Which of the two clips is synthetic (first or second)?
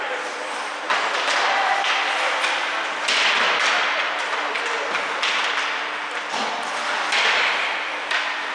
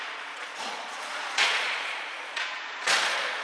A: second